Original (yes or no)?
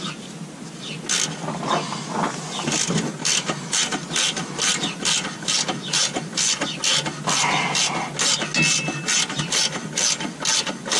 yes